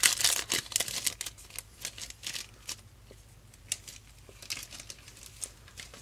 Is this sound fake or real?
real